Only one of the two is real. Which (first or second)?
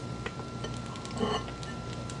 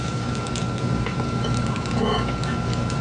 first